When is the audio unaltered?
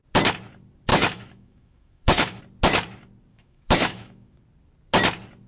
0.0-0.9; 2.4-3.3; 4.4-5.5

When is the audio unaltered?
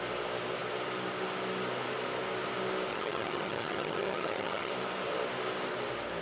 0.0-2.9; 4.7-6.2